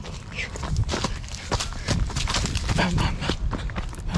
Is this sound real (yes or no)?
yes